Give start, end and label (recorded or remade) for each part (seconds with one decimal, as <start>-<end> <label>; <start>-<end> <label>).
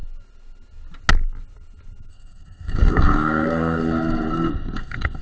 0.0-2.1 recorded; 2.1-5.2 remade